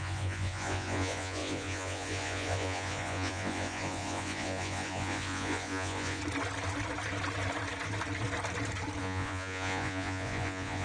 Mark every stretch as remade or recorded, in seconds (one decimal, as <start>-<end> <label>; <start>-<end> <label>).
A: 0.0-6.2 remade; 6.2-9.0 recorded; 9.0-10.8 remade